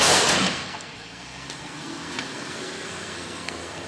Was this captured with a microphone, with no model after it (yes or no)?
no